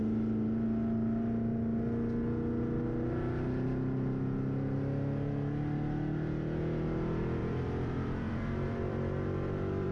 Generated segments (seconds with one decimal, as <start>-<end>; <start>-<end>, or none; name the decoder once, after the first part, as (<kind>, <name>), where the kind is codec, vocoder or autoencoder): 7.4-9.9 (vocoder, BigVGAN v2)